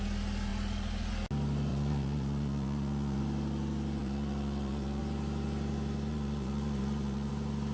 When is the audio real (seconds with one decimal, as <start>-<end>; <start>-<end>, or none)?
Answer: 0.0-1.7; 3.2-4.0; 5.0-6.1; 7.3-7.7